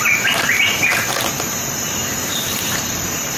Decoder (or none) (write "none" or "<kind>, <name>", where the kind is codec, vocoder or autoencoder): vocoder, BigVGAN v2